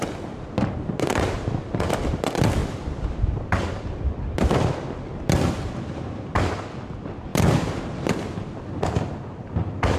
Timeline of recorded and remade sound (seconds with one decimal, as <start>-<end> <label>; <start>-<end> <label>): 0.0-2.6 recorded; 2.6-3.8 remade; 3.8-7.3 recorded; 7.3-7.8 remade; 7.8-10.0 recorded